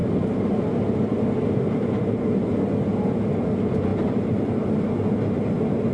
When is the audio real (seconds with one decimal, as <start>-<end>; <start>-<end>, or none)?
0.7-3.9; 4.7-5.9